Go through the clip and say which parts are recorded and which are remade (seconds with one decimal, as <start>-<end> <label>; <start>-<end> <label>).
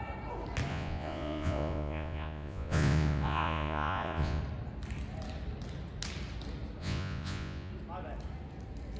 0.0-0.7 recorded; 0.7-4.4 remade; 4.4-6.8 recorded; 6.8-7.7 remade; 7.7-9.0 recorded